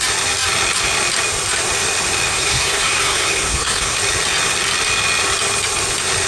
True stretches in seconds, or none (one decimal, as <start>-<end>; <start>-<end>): 0.0-2.3; 4.0-6.3